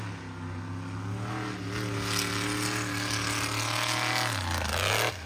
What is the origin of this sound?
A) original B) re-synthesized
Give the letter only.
A